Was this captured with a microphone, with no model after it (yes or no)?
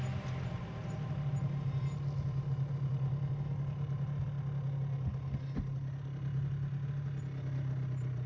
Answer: yes